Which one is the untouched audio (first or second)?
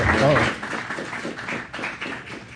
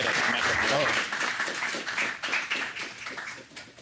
first